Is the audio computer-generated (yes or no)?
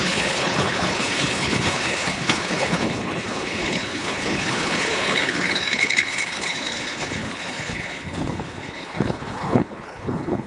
yes